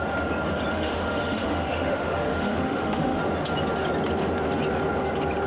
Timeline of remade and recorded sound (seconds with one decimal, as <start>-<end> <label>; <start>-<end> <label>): 0.0-0.7 recorded; 0.7-3.2 remade; 3.2-5.5 recorded